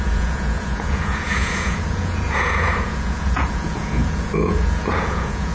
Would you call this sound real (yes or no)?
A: no